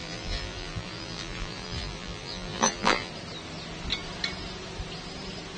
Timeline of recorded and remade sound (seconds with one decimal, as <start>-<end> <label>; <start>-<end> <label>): 0.0-3.1 remade; 3.1-5.6 recorded